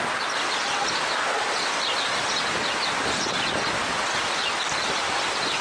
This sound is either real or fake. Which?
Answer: real